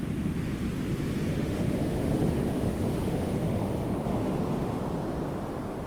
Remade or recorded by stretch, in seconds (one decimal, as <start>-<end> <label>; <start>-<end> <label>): 0.0-1.3 recorded; 1.3-3.7 remade; 3.7-4.2 recorded; 4.2-4.8 remade; 4.8-5.9 recorded